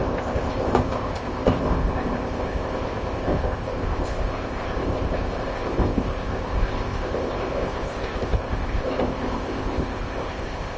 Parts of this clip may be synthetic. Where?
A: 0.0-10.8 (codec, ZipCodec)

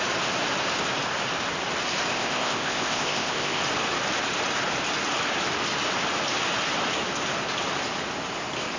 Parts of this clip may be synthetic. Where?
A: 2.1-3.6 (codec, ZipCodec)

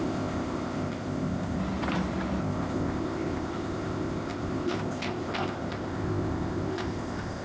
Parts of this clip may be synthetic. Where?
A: 0.0-1.6 (codec, ZipCodec); 2.4-7.4

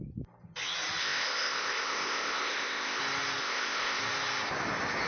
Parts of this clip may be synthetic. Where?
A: 1.0-3.0 (codec, ZipCodec); 3.4-4.0

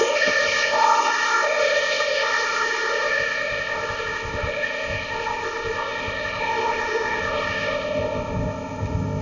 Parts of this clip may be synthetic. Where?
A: 0.0-9.2 (codec, ZipCodec)

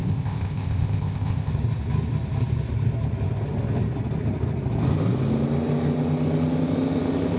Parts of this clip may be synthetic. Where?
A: 0.0-1.5 (codec, ZipCodec)

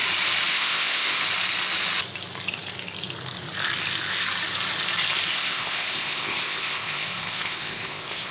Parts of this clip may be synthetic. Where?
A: 0.5-1.2 (codec, ZipCodec); 5.3-8.3

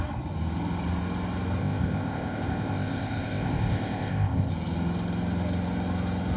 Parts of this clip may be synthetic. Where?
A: 1.6-4.5 (codec, ZipCodec)